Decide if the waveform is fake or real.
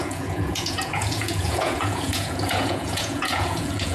fake